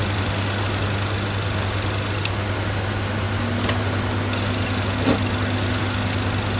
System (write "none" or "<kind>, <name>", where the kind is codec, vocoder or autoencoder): none